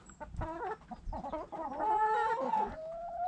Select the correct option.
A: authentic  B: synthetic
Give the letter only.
A